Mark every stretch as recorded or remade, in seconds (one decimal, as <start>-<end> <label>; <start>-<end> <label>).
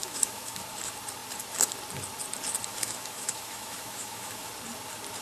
0.0-0.6 remade; 0.6-2.7 recorded; 2.7-4.5 remade; 4.5-5.2 recorded